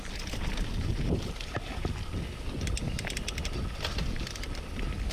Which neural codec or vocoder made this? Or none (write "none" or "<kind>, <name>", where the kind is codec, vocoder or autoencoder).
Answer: none